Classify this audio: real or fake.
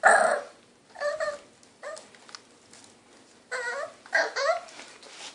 real